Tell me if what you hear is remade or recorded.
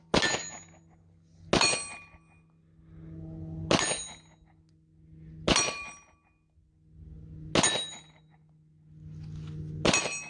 recorded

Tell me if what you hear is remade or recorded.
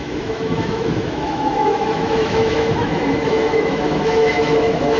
remade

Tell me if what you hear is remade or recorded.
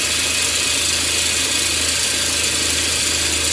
recorded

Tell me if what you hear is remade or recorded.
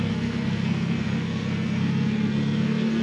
remade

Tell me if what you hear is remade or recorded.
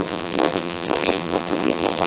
remade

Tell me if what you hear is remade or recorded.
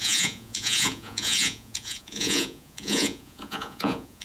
remade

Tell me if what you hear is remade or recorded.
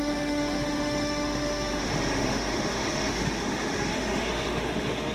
remade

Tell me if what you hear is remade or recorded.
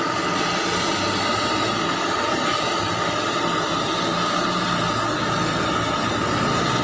recorded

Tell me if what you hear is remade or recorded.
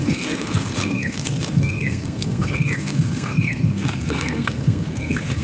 remade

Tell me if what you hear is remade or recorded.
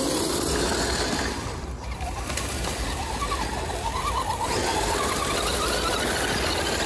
recorded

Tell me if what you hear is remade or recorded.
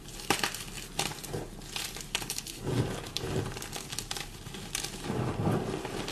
recorded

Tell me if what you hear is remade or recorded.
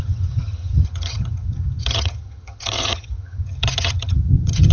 remade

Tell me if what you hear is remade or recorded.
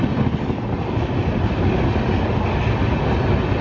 recorded